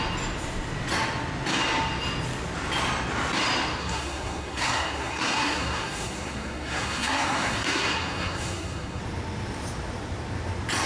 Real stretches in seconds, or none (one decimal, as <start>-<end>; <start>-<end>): 0.0-3.8; 9.0-10.9